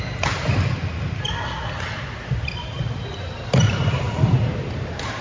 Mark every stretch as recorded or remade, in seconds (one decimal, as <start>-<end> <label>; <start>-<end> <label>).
0.0-3.1 recorded; 3.1-5.2 remade